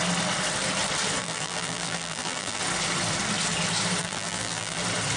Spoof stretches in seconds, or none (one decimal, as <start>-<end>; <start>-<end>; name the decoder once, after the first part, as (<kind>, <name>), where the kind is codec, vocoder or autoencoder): 1.2-2.6 (vocoder, BigVGAN v2); 4.0-4.8